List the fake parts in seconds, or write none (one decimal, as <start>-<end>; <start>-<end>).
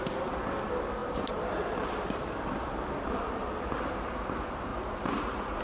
4.7-5.6